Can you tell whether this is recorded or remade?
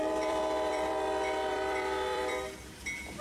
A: remade